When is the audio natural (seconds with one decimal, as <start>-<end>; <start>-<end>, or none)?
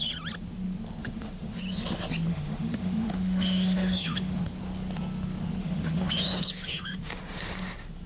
0.0-1.0; 1.6-2.3; 4.4-5.6; 7.4-8.1